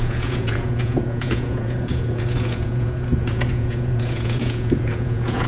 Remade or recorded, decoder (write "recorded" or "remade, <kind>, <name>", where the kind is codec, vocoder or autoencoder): remade, vocoder, Vocos